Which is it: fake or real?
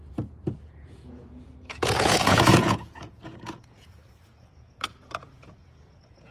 fake